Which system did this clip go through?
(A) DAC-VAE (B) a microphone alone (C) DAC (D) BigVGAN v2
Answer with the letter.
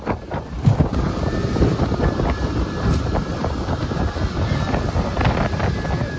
D